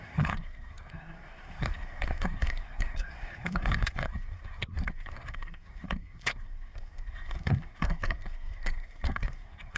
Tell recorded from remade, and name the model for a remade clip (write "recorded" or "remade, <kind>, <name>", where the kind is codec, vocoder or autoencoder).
remade, codec, SNAC